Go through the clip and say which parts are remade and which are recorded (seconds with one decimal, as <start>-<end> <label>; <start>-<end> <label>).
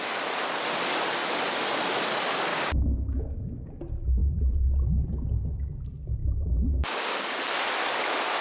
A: 0.0-2.5 recorded; 2.5-3.7 remade; 3.7-6.2 recorded; 6.2-7.4 remade; 7.4-8.4 recorded